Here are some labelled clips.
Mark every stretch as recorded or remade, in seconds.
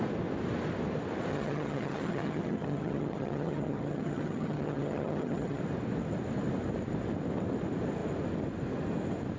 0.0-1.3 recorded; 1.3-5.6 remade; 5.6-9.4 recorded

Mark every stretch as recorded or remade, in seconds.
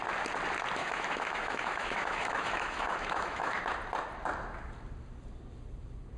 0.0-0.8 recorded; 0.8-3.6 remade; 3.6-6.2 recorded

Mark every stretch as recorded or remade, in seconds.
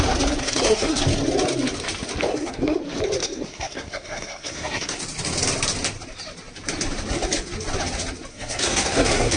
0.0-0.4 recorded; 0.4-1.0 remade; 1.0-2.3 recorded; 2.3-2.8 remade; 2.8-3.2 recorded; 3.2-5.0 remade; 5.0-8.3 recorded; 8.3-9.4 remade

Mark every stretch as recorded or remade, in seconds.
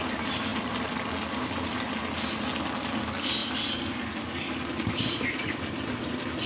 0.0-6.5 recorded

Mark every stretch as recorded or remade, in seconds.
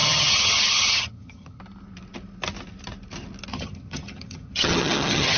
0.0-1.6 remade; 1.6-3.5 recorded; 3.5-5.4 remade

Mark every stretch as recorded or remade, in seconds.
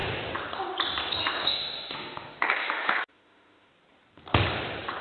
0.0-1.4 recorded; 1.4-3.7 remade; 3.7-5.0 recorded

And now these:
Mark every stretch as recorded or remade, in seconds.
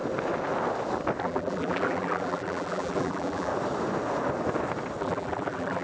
0.0-1.2 recorded; 1.2-3.5 remade; 3.5-5.0 recorded; 5.0-5.8 remade